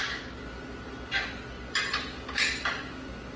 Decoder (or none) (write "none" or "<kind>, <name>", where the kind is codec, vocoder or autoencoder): none